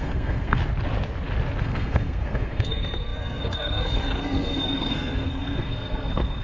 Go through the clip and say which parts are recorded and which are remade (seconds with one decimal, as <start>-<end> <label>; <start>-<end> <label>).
0.0-0.6 remade; 0.6-1.6 recorded; 1.6-6.4 remade